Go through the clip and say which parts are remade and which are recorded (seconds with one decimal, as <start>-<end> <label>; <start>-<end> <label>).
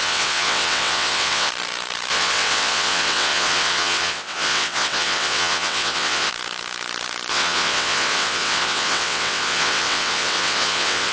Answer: 0.0-1.5 remade; 1.5-2.1 recorded; 2.1-6.3 remade; 6.3-7.3 recorded; 7.3-11.1 remade